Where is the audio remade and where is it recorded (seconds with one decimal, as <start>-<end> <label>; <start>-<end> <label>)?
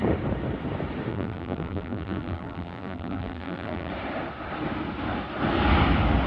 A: 0.0-1.1 recorded; 1.1-3.9 remade; 3.9-6.3 recorded